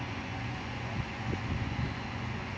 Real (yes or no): no